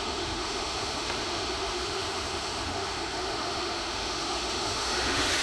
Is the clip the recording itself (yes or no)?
no